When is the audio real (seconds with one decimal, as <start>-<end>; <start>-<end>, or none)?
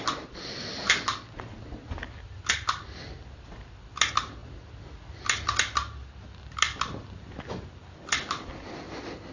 0.0-9.3